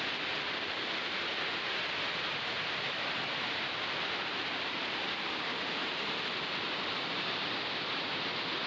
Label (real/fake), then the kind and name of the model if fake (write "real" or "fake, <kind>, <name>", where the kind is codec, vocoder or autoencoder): real